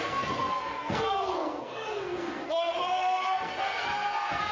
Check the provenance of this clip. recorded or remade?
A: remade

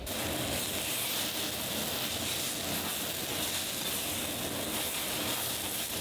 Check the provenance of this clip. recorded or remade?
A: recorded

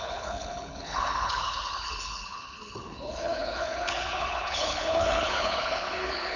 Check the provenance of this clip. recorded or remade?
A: remade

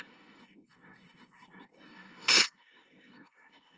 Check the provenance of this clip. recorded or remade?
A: remade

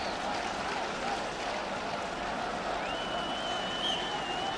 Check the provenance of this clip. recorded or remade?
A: recorded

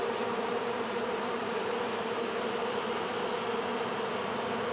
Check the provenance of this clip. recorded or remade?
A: recorded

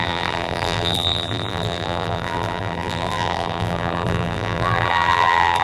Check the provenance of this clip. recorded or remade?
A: remade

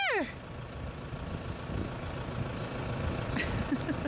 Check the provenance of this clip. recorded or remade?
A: recorded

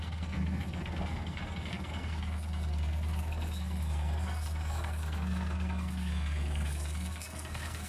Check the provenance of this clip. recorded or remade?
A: remade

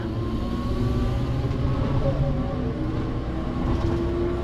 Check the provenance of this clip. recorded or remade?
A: recorded